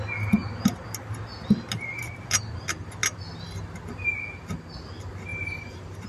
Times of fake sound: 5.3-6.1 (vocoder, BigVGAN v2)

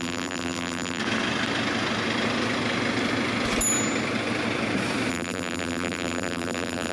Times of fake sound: 0.0-1.0 (vocoder, BigVGAN v2); 5.1-6.9